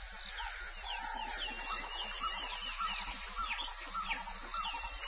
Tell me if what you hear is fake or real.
real